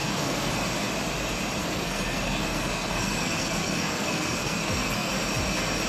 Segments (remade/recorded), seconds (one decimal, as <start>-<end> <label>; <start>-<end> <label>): 0.0-0.5 remade; 0.5-1.6 recorded; 1.6-5.1 remade; 5.1-5.9 recorded